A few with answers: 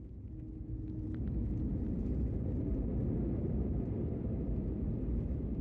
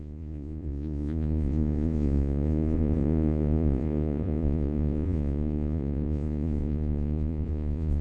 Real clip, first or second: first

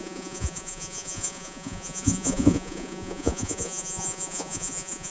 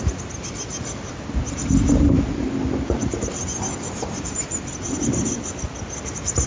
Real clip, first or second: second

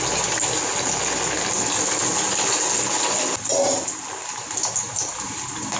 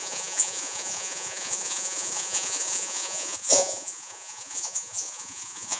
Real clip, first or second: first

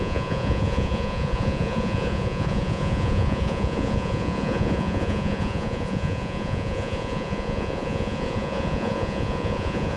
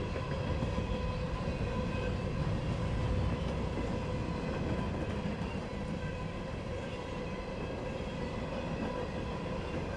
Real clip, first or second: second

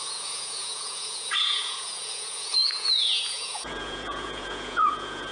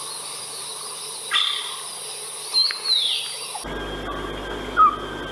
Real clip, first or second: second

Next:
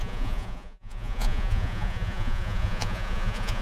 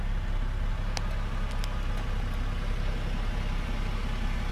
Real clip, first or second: second